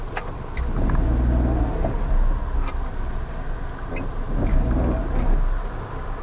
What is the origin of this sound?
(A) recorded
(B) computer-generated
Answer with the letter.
A